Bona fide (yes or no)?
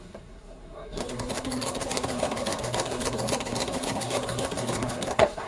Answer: no